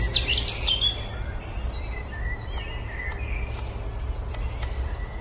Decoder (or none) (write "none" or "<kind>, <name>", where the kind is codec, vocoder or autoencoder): none